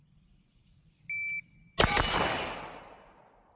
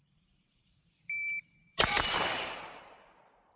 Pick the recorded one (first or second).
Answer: first